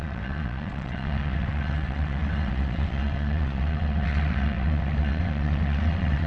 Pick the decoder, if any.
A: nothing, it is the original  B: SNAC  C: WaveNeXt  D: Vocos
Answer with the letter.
C